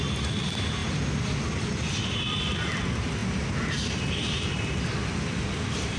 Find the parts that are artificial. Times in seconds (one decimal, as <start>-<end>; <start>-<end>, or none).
0.0-0.8; 2.2-3.2; 3.7-6.0